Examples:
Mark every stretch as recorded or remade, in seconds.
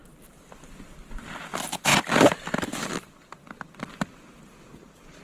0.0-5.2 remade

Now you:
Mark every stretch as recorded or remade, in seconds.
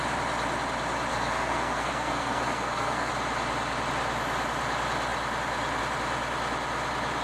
0.0-1.1 recorded; 1.1-3.1 remade; 3.1-7.2 recorded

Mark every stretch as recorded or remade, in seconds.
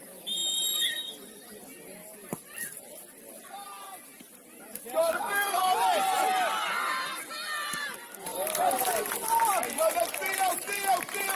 0.0-5.0 recorded; 5.0-5.7 remade; 5.7-11.4 recorded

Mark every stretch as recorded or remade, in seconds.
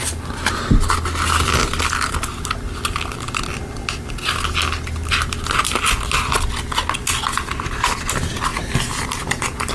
0.0-8.5 recorded; 8.5-9.7 remade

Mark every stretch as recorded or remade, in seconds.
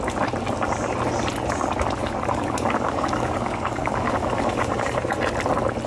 0.0-2.0 recorded; 2.0-5.0 remade; 5.0-5.9 recorded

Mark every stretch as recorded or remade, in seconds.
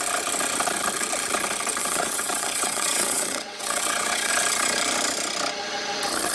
0.0-1.8 recorded; 1.8-4.3 remade; 4.3-6.3 recorded